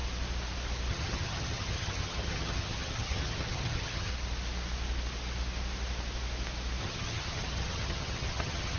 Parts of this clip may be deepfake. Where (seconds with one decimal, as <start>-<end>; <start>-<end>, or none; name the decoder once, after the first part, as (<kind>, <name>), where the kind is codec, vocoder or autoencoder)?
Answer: 0.9-4.1 (vocoder, HiFi-GAN); 6.8-8.8